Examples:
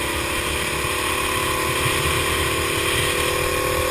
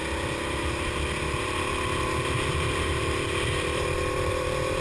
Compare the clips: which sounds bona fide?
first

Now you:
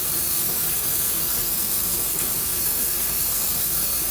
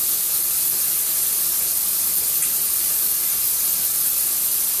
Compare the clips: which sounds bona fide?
second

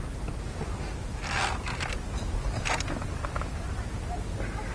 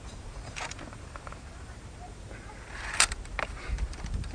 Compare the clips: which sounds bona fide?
first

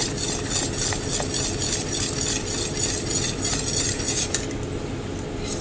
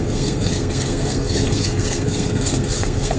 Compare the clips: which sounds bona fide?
first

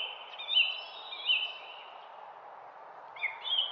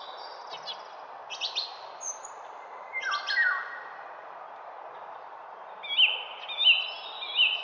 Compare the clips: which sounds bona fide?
second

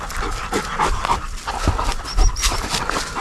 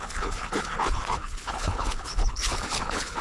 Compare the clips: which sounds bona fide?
first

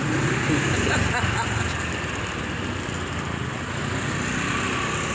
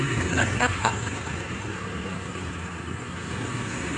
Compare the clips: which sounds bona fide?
first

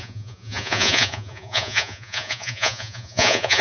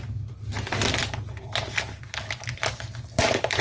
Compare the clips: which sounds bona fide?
second